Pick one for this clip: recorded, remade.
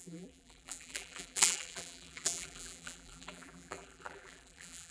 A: remade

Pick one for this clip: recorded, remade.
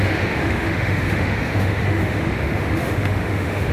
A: remade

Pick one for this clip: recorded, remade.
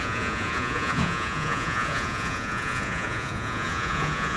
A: remade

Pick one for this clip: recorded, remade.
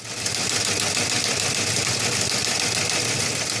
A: recorded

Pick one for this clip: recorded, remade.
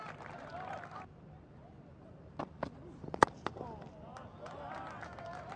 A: recorded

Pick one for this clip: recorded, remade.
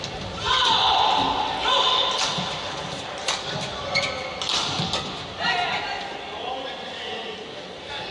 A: recorded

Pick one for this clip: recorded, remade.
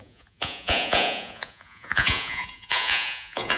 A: remade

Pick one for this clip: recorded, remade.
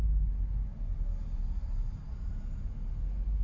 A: recorded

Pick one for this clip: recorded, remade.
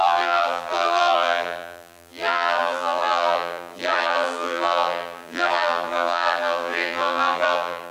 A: remade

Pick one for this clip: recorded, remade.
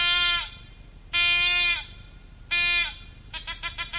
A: recorded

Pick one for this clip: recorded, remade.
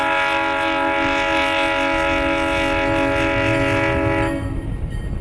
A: recorded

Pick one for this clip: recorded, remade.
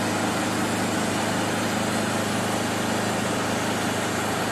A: recorded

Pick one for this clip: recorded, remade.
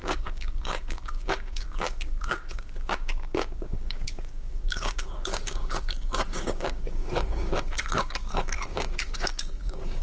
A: remade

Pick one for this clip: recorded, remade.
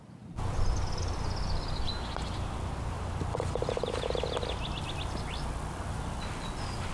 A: recorded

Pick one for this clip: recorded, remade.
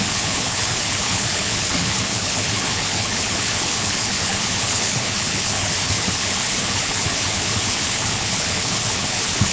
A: remade